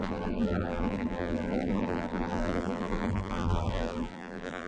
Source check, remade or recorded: remade